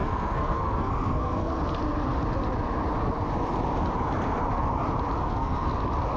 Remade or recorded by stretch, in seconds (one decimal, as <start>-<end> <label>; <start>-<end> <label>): 0.0-1.5 remade; 1.5-5.2 recorded; 5.2-5.7 remade; 5.7-6.2 recorded